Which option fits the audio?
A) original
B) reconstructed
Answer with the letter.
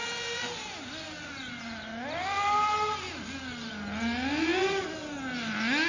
A